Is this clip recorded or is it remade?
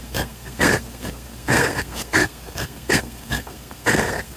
remade